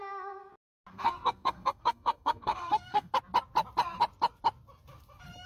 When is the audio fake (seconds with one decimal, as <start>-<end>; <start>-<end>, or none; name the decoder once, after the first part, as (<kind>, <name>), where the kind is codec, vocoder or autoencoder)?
0.9-3.1 (codec, SNAC)